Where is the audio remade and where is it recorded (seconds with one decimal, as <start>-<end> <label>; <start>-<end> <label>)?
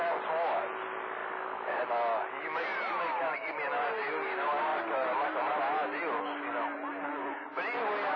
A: 0.0-2.7 recorded; 2.7-3.6 remade; 3.6-4.7 recorded; 4.7-5.6 remade; 5.6-8.2 recorded